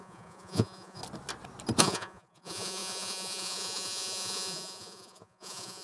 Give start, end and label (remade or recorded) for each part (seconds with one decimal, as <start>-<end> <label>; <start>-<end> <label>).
0.0-1.0 remade; 1.0-1.8 recorded; 1.8-5.8 remade